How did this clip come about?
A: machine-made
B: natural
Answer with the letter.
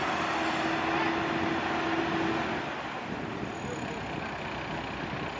B